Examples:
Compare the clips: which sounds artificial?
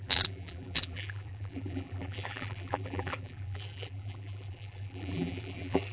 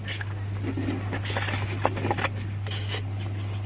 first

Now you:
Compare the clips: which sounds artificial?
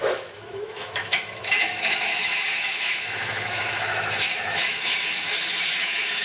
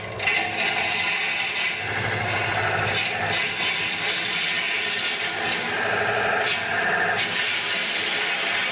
first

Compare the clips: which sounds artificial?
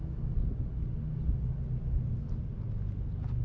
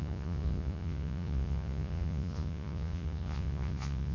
second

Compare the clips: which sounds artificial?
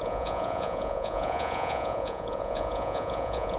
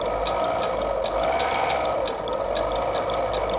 first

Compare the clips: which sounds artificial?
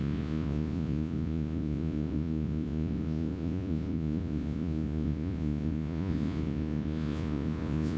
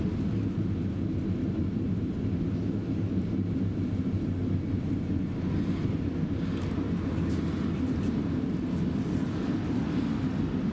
first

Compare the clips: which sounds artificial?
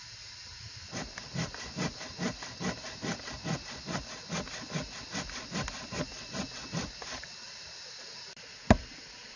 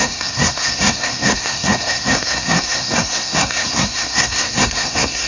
second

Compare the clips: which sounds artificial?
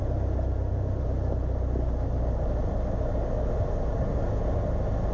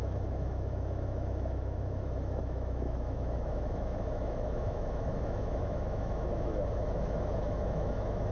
second